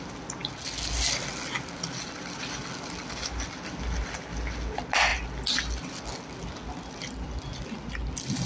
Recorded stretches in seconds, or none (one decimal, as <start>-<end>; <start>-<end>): 0.0-8.5